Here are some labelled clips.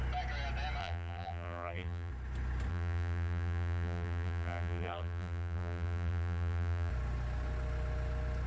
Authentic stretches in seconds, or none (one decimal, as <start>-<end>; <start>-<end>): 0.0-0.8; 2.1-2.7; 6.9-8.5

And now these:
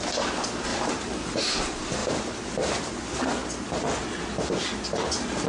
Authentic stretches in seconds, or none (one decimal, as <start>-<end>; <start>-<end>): 0.0-0.7; 1.5-2.0; 2.9-5.5

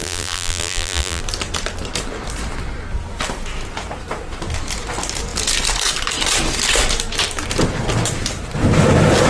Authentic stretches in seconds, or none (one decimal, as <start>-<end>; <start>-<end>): 1.2-9.3

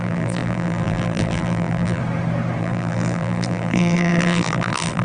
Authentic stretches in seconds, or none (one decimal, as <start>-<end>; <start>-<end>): 2.0-2.6